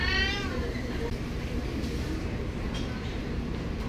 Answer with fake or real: fake